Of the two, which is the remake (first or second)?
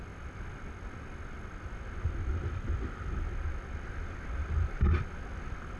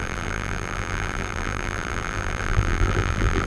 second